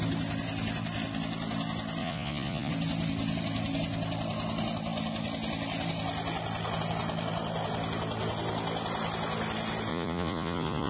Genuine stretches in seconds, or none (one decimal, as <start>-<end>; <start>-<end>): 0.0-2.0; 2.7-9.9